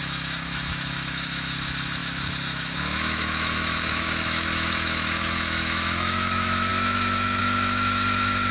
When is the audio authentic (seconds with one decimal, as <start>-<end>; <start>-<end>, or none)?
none